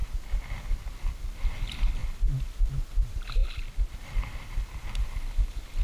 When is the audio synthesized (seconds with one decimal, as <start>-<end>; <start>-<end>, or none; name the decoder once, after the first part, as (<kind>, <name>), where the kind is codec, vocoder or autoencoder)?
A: none